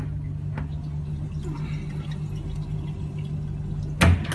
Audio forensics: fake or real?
real